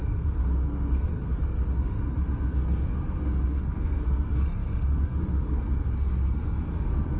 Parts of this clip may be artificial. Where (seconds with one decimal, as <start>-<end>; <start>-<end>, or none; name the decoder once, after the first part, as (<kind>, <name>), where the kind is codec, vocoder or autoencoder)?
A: 0.0-7.2 (codec, SNAC)